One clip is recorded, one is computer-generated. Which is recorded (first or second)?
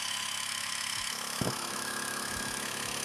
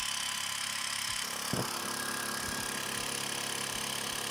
second